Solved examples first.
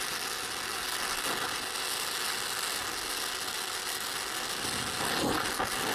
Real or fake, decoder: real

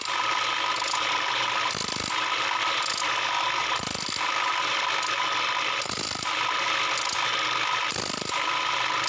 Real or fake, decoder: real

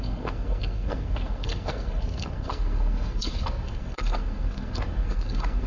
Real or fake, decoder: fake, codec, SNAC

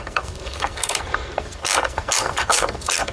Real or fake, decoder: fake, codec, SNAC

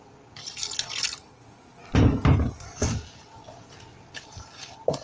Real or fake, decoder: real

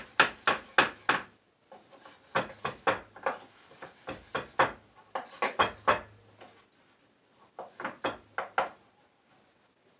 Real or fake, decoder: real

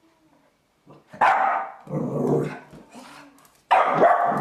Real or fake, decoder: real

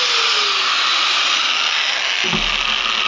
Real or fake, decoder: real